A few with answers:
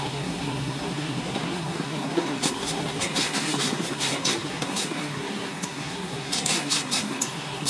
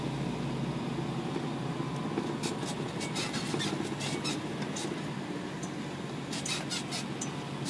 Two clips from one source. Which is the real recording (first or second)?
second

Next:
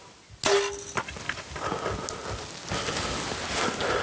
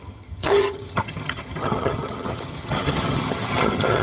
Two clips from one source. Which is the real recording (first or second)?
first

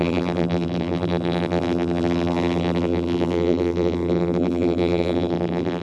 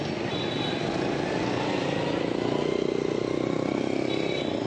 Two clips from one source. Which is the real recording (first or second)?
second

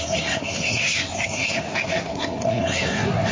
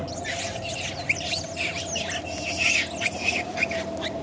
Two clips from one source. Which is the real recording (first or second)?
second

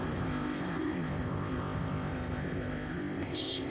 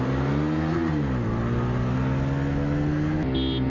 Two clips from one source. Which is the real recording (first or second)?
second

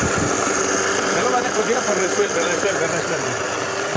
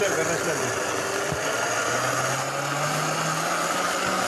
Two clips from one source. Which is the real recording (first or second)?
second